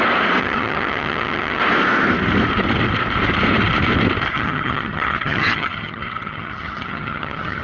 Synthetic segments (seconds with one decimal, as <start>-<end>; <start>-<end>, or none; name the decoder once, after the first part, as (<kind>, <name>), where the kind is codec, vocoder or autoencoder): 0.4-1.6 (vocoder, HiFi-GAN); 4.3-7.6